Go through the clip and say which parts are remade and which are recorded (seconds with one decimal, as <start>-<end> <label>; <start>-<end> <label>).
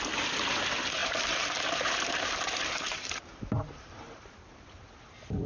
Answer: 0.0-1.0 recorded; 1.0-4.3 remade; 4.3-5.5 recorded